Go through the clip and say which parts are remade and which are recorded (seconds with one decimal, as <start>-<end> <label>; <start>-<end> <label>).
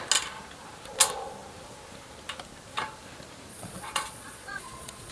0.0-3.5 recorded; 3.5-5.1 remade